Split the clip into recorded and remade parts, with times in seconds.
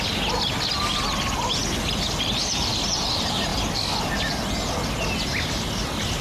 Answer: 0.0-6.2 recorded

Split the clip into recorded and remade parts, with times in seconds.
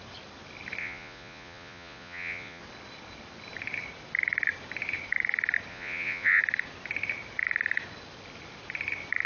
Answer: 0.0-0.8 recorded; 0.8-2.6 remade; 2.6-5.7 recorded; 5.7-6.4 remade; 6.4-9.3 recorded